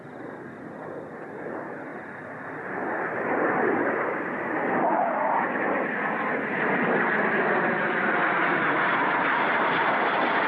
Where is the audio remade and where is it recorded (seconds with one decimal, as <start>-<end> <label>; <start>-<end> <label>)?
0.0-10.5 recorded